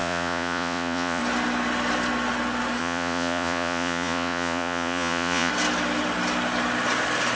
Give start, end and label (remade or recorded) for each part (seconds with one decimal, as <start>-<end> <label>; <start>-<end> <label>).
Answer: 0.0-1.2 remade; 1.2-2.8 recorded; 2.8-5.5 remade; 5.5-7.3 recorded